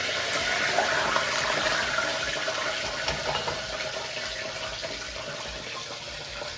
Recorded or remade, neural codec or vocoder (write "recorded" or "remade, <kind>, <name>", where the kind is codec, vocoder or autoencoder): recorded